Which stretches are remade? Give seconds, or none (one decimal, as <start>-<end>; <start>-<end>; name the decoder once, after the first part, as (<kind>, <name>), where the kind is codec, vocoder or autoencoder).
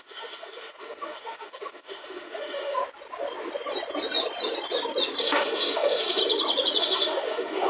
0.0-2.8 (autoencoder, DAC-VAE); 5.2-6.2; 6.8-7.7